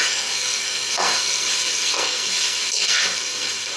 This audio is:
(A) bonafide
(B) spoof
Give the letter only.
B